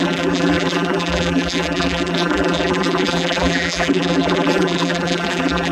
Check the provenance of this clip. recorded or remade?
remade